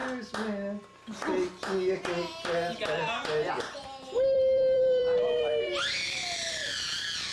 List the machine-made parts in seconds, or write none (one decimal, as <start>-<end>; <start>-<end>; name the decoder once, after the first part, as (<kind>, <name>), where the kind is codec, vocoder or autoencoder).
3.5-7.3 (vocoder, BigVGAN v2)